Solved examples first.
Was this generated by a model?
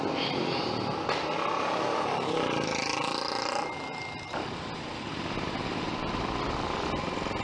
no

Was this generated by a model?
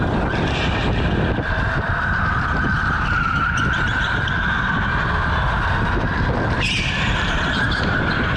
no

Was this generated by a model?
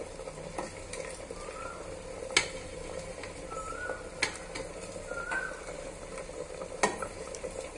no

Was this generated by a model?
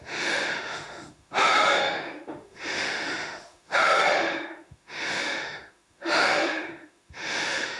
yes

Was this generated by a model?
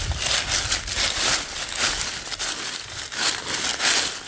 no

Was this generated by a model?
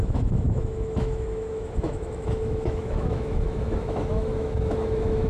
yes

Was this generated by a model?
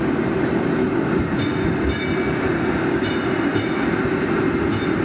no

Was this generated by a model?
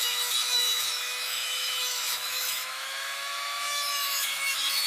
yes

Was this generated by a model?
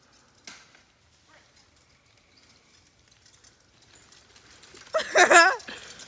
no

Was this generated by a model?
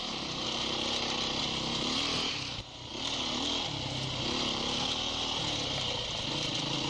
no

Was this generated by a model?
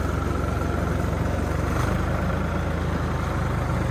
no